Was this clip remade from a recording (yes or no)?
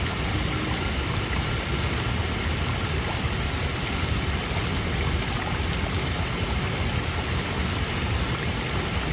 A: no